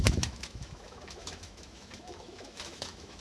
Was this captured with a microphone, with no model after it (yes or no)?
no